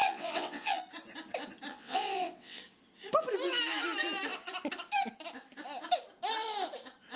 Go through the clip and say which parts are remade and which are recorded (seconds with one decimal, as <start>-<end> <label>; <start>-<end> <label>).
0.0-0.8 remade; 0.8-1.7 recorded; 1.7-2.6 remade; 2.6-7.2 recorded